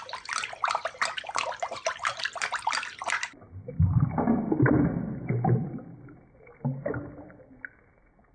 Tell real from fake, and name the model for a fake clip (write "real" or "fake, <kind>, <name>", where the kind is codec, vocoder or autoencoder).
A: real